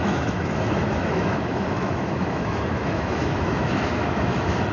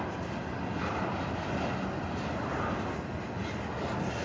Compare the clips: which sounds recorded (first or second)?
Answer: second